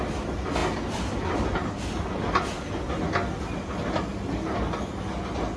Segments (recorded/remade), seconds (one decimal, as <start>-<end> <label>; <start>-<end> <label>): 0.0-5.6 recorded